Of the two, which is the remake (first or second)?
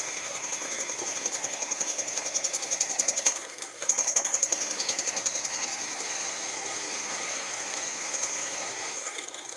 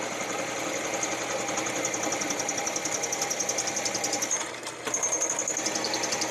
first